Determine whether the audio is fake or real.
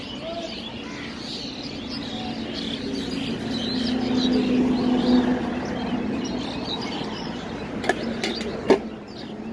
real